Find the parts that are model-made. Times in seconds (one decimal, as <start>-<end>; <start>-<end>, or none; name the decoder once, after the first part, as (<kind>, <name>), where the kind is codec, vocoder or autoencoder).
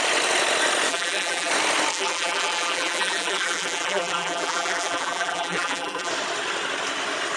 0.9-1.5 (vocoder, BigVGAN v2); 1.9-6.1